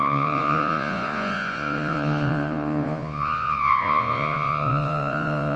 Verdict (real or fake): fake